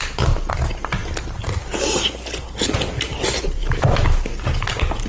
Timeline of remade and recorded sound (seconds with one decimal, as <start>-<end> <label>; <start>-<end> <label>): 0.0-3.6 recorded; 3.6-4.3 remade; 4.3-5.1 recorded